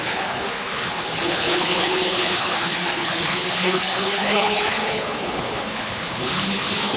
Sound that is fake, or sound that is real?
fake